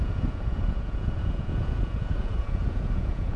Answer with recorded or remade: remade